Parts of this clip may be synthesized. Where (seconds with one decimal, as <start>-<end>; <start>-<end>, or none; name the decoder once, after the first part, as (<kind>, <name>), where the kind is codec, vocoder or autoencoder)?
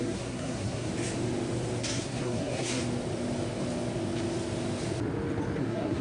0.0-0.9 (codec, SNAC); 1.8-2.8; 5.6-6.0